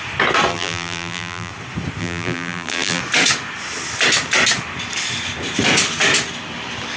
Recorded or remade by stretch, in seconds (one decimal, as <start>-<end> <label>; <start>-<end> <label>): 0.0-0.5 recorded; 0.5-1.5 remade; 1.5-2.0 recorded; 2.0-3.0 remade; 3.0-7.0 recorded